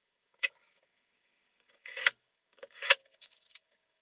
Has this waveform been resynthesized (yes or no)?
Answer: yes